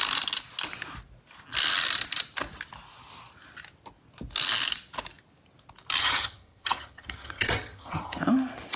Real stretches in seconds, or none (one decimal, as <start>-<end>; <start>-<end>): 0.0-6.0; 8.2-8.8